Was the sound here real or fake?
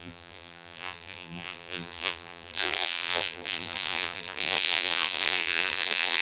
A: fake